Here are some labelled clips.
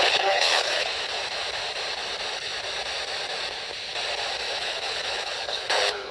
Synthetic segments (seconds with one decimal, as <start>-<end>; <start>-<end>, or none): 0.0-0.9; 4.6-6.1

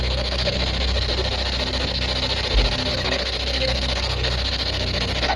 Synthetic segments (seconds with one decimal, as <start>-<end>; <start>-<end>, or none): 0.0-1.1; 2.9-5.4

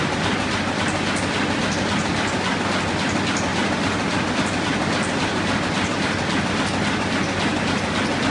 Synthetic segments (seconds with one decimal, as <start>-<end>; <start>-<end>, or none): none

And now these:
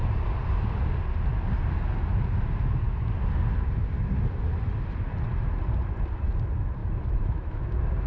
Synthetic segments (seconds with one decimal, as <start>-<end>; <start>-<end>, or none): 6.8-7.6

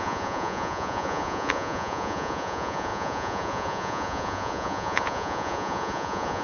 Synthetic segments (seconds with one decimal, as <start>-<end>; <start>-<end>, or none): 0.0-6.4

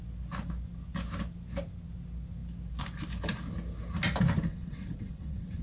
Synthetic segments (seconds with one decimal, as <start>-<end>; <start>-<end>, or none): 4.5-5.6